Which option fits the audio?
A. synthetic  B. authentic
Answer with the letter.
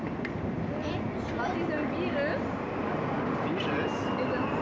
B